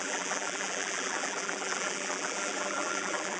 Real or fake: fake